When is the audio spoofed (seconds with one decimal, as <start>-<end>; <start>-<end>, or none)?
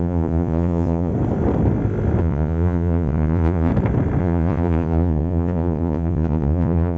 0.0-1.1; 2.2-3.7; 4.2-7.0